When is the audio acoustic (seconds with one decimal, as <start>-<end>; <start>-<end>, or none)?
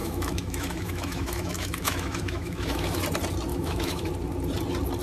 3.0-3.5; 4.1-5.0